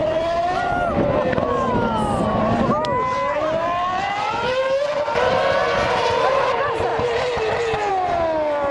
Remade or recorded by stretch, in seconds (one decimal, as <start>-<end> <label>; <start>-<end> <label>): 0.0-8.7 recorded